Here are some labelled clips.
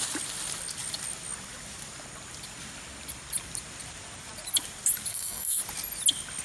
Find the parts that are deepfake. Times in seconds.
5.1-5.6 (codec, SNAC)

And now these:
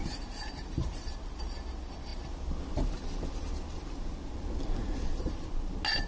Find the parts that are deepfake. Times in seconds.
none

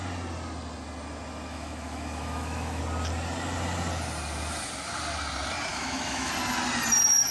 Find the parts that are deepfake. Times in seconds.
1.5-2.8 (autoencoder, DAC-VAE); 5.7-6.3

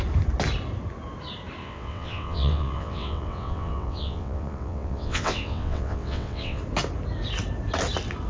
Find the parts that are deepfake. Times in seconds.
1.6-6.6 (vocoder, WaveNeXt)

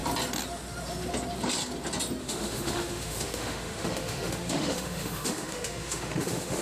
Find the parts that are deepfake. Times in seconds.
2.2-6.6 (autoencoder, DAC-VAE)

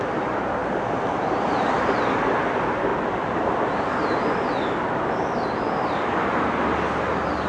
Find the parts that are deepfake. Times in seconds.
2.9-3.6 (vocoder, BigVGAN v2)